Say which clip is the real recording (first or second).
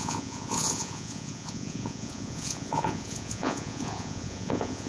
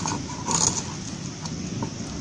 second